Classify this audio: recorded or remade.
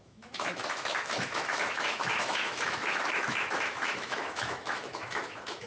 remade